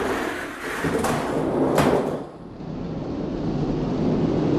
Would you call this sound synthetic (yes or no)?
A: no